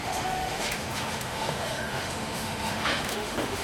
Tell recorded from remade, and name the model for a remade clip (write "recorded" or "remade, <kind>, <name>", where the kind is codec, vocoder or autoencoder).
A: remade, autoencoder, DAC-VAE